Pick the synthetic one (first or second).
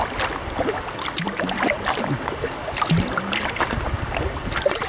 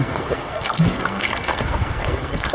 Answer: second